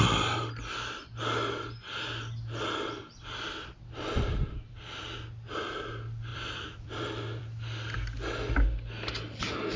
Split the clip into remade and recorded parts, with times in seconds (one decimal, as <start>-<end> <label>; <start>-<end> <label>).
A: 0.0-4.3 recorded; 4.3-5.0 remade; 5.0-6.3 recorded; 6.3-7.4 remade; 7.4-9.8 recorded